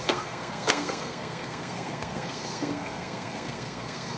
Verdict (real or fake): fake